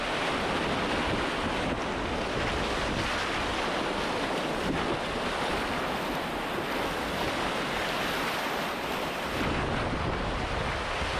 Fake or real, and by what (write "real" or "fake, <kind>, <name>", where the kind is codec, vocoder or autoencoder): real